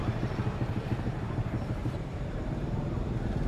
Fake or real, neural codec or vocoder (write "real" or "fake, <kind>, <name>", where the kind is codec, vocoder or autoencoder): fake, vocoder, BigVGAN v2